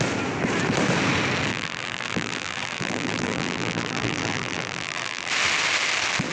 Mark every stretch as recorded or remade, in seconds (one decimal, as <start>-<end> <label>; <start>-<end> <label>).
0.0-1.5 recorded; 1.5-5.3 remade; 5.3-6.3 recorded